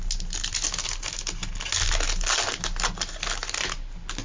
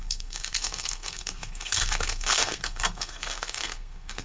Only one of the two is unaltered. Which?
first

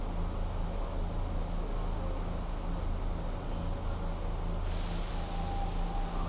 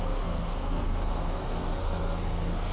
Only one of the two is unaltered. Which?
first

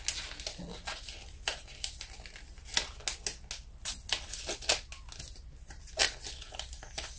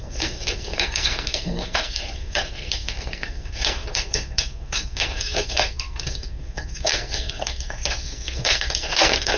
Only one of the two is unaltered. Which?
first